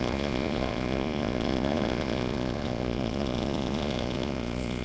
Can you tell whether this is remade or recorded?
remade